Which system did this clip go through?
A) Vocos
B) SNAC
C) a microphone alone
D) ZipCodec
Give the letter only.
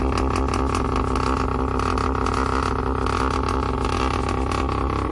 C